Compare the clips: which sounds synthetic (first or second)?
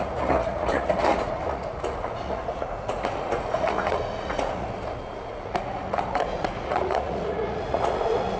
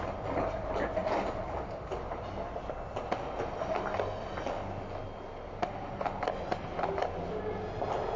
first